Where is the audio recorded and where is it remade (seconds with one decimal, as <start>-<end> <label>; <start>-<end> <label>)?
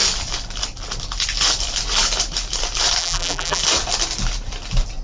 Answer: 0.0-3.0 recorded; 3.0-3.6 remade; 3.6-5.0 recorded